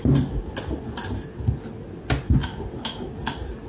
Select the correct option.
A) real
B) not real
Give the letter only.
A